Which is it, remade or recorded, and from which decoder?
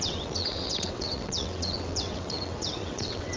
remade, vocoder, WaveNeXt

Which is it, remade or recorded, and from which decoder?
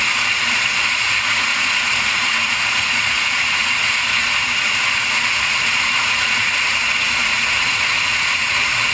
remade, vocoder, Vocos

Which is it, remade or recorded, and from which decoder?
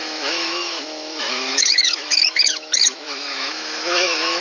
remade, autoencoder, DAC-VAE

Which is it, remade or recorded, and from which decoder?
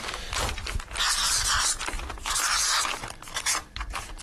remade, vocoder, BigVGAN v2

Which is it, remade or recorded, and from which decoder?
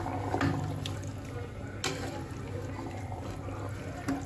recorded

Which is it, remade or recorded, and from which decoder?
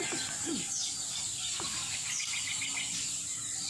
recorded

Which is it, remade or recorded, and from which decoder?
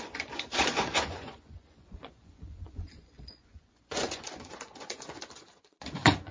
remade, vocoder, Vocos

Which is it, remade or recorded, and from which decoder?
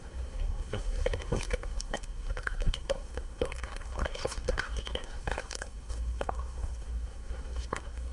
remade, codec, SNAC